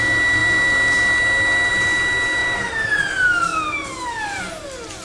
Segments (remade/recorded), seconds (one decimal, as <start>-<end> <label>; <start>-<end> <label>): 0.0-2.4 recorded; 2.4-3.0 remade; 3.0-3.5 recorded; 3.5-4.4 remade; 4.4-5.0 recorded